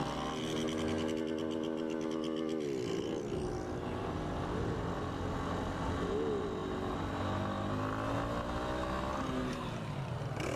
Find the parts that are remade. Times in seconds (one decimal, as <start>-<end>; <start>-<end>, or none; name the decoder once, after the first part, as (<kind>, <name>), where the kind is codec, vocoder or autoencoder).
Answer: none